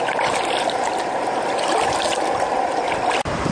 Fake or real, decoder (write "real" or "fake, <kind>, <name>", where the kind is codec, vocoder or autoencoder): real